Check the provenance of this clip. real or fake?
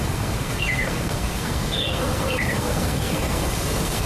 fake